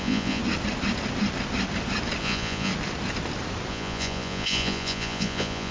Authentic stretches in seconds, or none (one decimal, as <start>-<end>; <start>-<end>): 0.4-2.2; 2.7-3.7